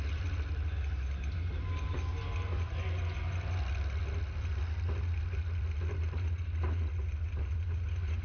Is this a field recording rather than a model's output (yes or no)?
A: yes